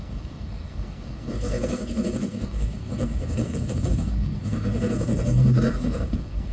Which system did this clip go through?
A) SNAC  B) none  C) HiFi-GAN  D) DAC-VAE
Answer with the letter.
A